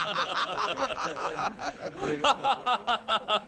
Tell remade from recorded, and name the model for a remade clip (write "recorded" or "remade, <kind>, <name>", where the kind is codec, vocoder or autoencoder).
remade, codec, HILCodec